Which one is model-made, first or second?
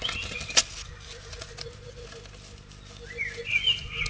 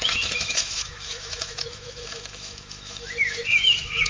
second